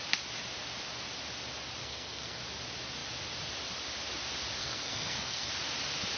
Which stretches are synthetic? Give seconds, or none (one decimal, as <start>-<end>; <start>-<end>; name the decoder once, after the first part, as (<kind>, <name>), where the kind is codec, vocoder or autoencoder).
1.8-2.4 (codec, SNAC); 4.6-5.5